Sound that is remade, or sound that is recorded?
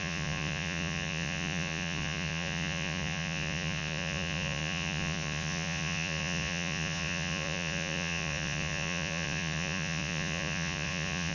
remade